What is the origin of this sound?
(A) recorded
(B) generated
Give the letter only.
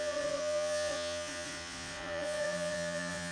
B